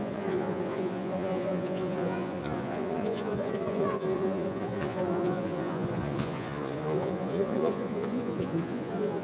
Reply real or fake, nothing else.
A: fake